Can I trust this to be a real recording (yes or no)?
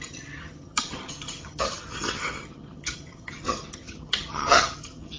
no